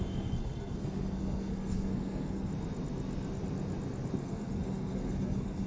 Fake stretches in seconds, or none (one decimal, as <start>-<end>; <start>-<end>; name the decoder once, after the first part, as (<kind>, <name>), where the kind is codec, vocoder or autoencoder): 0.0-2.5 (codec, SNAC); 4.2-5.7